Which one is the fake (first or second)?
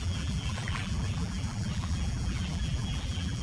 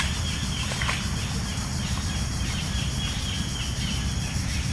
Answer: first